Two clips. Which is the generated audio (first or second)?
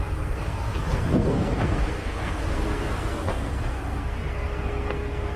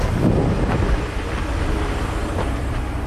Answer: first